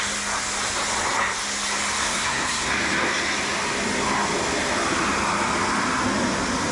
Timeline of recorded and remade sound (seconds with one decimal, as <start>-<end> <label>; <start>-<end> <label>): 0.0-2.0 recorded; 2.0-2.7 remade; 2.7-6.7 recorded

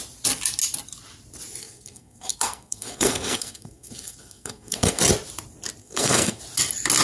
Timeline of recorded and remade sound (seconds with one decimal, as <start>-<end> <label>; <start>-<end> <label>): 0.0-1.6 recorded; 1.6-5.0 remade; 5.0-5.8 recorded; 5.8-6.4 remade; 6.4-7.0 recorded